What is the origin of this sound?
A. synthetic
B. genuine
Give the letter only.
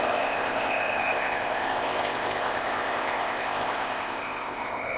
A